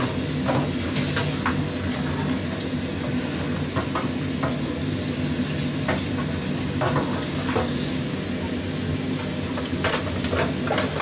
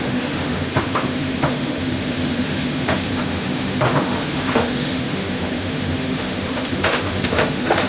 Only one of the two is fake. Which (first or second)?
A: second